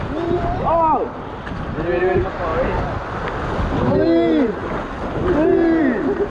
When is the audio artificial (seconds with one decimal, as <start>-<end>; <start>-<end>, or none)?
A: none